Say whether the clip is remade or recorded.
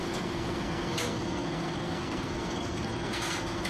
remade